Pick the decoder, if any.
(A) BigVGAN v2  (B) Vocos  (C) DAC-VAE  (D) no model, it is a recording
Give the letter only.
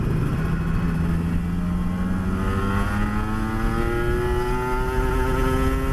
D